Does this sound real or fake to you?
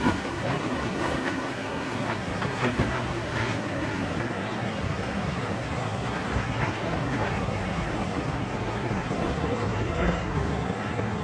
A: fake